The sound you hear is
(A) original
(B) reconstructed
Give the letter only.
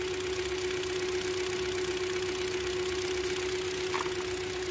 A